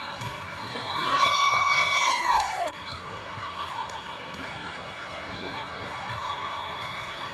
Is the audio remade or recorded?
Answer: remade